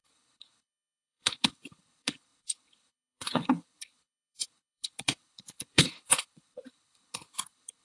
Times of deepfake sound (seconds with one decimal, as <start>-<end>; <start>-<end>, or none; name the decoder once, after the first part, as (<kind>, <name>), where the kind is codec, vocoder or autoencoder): 0.0-7.8 (codec, HILCodec)

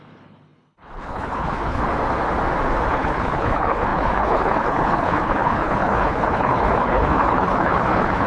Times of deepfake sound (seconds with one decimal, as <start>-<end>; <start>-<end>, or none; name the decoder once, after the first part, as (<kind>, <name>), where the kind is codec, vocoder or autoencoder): 0.0-1.8 (codec, HILCodec); 2.9-8.3

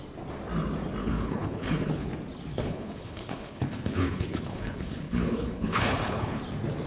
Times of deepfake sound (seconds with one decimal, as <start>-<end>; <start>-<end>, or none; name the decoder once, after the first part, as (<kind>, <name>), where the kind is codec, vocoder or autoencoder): 1.0-2.1 (codec, HILCodec); 2.5-6.4

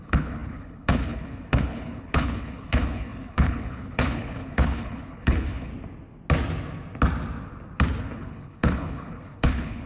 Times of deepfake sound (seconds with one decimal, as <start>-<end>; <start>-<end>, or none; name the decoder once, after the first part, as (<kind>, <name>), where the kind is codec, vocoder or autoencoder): 0.0-5.7 (codec, HILCodec); 8.0-9.9